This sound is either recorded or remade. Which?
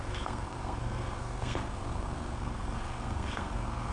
remade